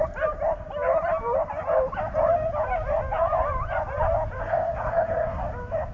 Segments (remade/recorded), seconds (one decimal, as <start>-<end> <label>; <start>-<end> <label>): 0.0-4.4 recorded; 4.4-5.4 remade; 5.4-5.9 recorded

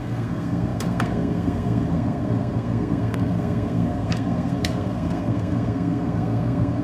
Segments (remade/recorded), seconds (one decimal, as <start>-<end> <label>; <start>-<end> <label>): 0.0-6.8 remade

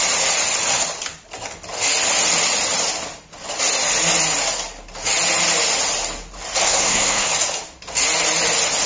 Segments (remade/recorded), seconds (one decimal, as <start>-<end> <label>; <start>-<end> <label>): 0.0-6.6 recorded; 6.6-7.3 remade; 7.3-8.9 recorded

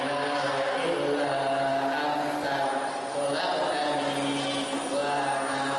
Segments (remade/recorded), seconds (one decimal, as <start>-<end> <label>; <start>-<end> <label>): 0.0-5.8 recorded